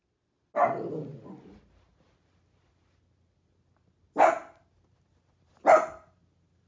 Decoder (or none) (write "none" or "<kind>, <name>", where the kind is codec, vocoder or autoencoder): none